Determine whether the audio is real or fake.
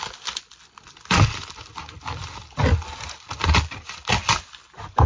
real